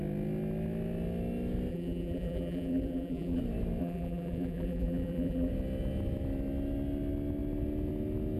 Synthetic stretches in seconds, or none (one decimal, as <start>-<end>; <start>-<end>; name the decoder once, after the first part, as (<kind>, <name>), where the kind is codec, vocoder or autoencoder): 1.7-3.4 (vocoder, BigVGAN v2); 3.8-5.5

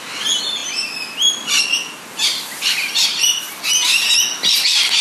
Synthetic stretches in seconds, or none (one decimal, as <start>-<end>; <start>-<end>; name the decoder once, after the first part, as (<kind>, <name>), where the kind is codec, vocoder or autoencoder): 2.8-4.2 (vocoder, BigVGAN v2)

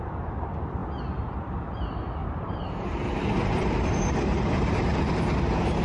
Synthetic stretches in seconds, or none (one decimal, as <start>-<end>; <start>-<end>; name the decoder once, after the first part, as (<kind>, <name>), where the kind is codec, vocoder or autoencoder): 2.2-5.8 (vocoder, BigVGAN v2)